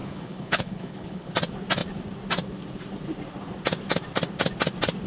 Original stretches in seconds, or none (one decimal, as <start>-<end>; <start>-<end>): 1.3-5.1